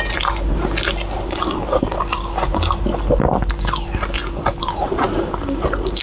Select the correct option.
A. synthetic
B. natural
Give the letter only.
B